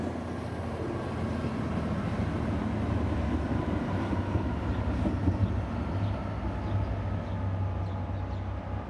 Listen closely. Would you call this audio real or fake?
real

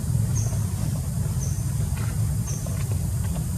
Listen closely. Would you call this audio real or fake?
real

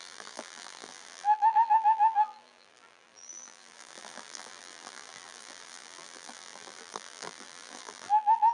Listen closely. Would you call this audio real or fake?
fake